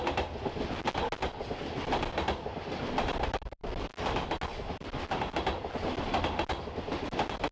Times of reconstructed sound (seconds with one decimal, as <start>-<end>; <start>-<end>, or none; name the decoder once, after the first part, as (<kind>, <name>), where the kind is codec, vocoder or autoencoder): none